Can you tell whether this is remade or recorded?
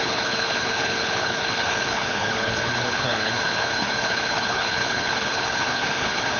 remade